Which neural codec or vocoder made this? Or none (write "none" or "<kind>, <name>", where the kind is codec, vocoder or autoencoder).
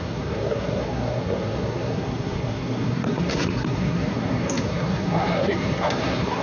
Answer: codec, SNAC